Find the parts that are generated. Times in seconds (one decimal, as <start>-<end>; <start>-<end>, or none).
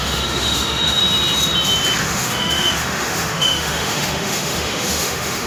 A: 0.0-1.0; 2.0-5.5